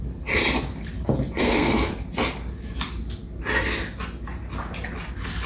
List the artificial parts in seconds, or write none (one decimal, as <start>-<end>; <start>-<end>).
1.4-1.9